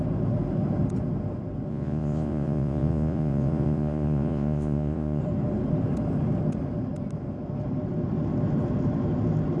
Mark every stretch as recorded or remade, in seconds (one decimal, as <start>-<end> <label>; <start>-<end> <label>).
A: 0.0-1.7 recorded; 1.7-5.2 remade; 5.2-9.6 recorded